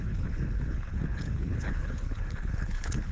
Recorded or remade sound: remade